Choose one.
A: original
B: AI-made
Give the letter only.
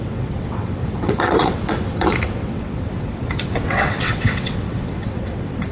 B